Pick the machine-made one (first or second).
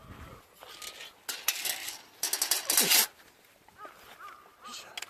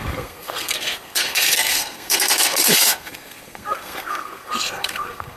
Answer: second